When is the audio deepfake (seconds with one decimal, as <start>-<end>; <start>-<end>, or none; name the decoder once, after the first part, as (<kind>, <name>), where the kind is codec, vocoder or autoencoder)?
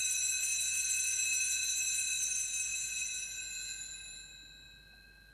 0.5-1.7 (vocoder, Vocos); 2.7-4.3